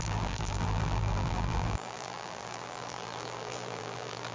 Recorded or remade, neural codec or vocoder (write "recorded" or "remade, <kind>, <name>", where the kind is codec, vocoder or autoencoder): remade, vocoder, BigVGAN v2